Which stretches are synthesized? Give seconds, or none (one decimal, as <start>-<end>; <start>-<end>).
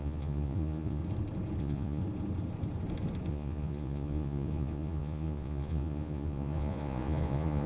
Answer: 0.0-1.0; 1.6-2.0; 3.3-7.7